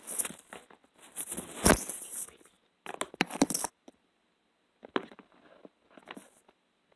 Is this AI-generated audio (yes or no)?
no